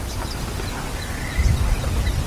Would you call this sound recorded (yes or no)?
yes